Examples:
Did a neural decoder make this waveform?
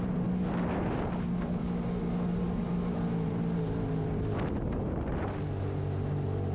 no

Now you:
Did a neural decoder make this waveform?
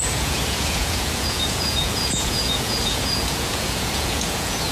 yes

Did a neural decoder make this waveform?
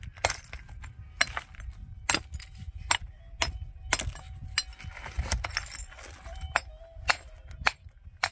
no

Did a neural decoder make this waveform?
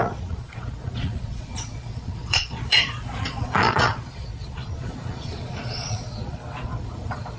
yes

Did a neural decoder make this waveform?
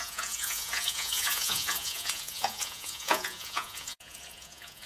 yes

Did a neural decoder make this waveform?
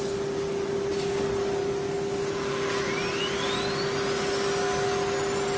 no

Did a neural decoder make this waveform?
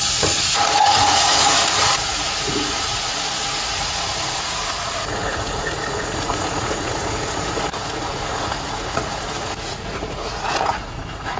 yes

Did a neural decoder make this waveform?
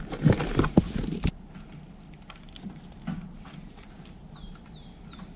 no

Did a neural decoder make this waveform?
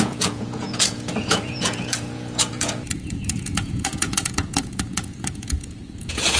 yes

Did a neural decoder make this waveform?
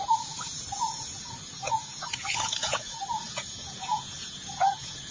yes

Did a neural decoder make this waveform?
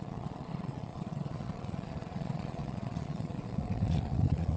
yes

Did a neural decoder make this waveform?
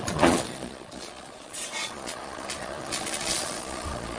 yes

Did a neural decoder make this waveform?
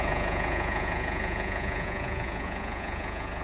yes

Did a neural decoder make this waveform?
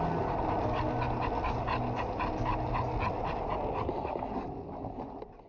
no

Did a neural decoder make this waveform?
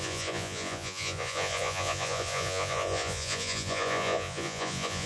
yes